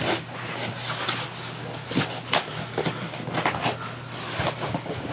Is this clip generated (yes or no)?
no